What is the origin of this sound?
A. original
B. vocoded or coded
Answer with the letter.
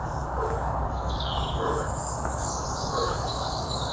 B